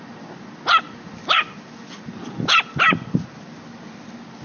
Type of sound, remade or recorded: recorded